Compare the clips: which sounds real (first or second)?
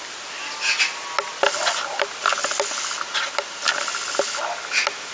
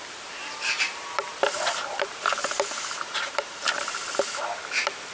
first